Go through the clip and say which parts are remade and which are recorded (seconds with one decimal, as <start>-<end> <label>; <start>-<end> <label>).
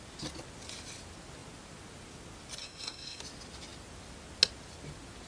0.0-2.6 recorded; 2.6-3.2 remade; 3.2-5.3 recorded